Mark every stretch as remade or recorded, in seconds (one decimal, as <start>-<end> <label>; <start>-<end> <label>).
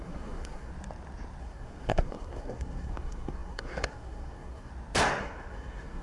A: 0.0-0.7 remade; 0.7-1.4 recorded; 1.4-4.7 remade; 4.7-5.2 recorded; 5.2-6.0 remade